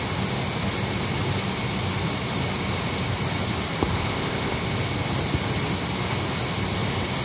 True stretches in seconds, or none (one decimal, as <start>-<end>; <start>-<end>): 0.0-3.9; 4.5-7.2